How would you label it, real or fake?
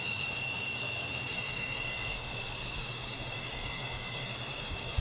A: fake